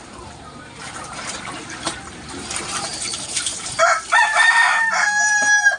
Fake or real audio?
fake